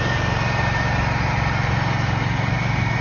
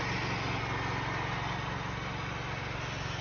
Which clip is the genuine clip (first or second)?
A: second